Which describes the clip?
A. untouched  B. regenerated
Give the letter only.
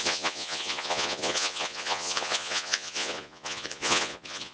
B